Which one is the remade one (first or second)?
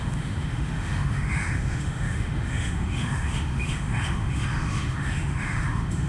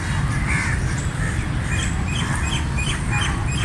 first